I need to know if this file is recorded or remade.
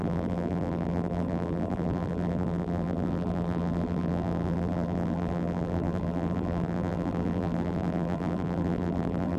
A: remade